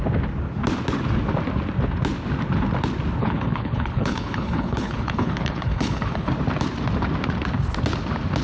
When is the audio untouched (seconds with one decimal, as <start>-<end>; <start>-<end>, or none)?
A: 0.0-3.2; 6.3-8.4